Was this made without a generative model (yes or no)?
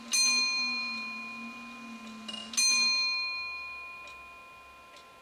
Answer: yes